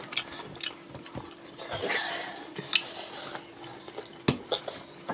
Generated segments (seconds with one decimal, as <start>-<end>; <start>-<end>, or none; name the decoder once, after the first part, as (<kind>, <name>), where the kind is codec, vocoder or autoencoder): none